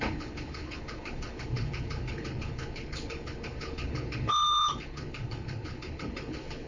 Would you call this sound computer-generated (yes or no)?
yes